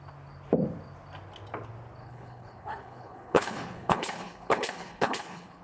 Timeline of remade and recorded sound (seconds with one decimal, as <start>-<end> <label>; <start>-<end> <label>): 0.0-2.0 recorded; 2.0-5.6 remade